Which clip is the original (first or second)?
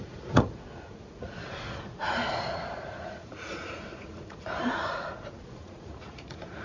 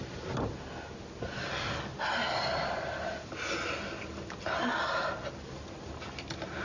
second